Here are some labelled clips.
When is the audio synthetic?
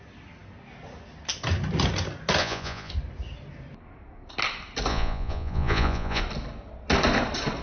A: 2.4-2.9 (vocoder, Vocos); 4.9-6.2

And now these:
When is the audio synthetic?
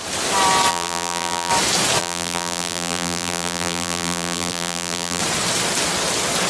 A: 0.7-1.5 (vocoder, BigVGAN v2); 2.0-5.2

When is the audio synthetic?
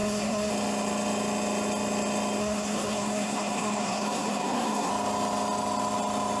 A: 0.0-0.5 (codec, SNAC); 2.4-4.9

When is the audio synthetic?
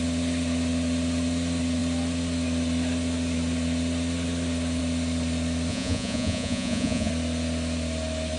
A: 5.7-7.1 (vocoder, Vocos)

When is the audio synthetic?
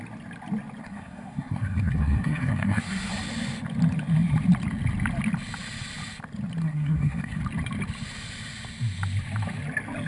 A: 0.8-3.1 (codec, SNAC); 6.6-7.4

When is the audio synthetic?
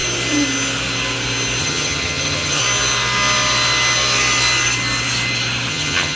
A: 1.6-2.6 (vocoder, HiFi-GAN); 5.7-6.2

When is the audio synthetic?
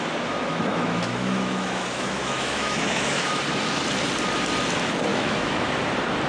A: 0.5-3.4 (autoencoder, DAC-VAE); 5.1-5.7